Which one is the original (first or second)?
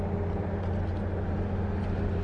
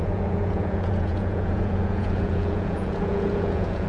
first